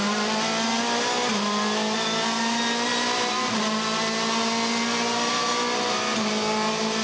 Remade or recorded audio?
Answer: recorded